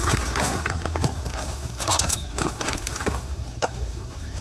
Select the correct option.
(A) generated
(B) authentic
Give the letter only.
A